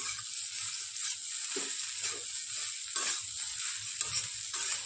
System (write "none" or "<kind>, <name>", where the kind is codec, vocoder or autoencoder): none